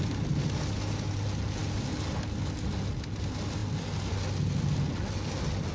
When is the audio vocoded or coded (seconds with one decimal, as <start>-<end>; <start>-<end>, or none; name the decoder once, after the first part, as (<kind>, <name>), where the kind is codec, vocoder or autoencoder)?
none